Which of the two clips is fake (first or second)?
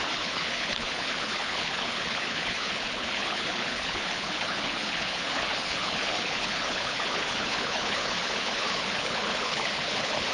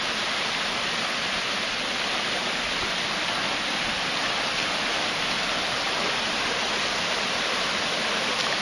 first